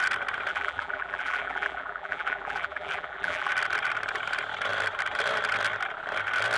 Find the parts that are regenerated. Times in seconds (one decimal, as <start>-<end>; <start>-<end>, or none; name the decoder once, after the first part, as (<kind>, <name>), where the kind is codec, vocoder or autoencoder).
0.5-3.5 (vocoder, BigVGAN v2)